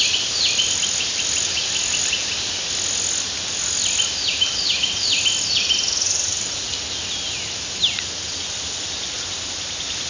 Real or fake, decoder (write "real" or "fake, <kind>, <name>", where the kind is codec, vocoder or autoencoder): real